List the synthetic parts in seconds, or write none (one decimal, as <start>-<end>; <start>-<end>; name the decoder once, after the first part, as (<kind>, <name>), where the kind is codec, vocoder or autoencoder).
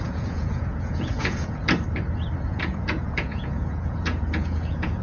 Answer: 0.0-1.6 (vocoder, Vocos); 2.4-5.0